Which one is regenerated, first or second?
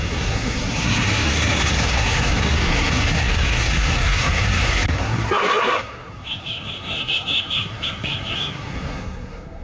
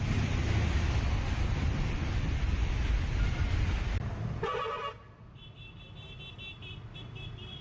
first